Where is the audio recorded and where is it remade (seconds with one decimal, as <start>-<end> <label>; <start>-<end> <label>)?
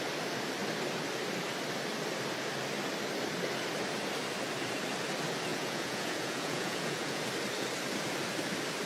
0.0-5.5 recorded; 5.5-7.2 remade; 7.2-8.9 recorded